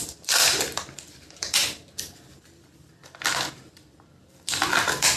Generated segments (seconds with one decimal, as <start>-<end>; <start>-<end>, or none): 0.0-5.2